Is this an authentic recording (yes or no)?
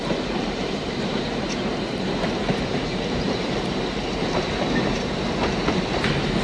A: no